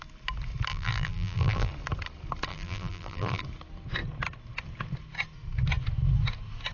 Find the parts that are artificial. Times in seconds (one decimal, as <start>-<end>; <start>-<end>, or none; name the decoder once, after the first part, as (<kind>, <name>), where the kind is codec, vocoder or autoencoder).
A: 0.7-1.7 (vocoder, BigVGAN v2); 2.5-3.4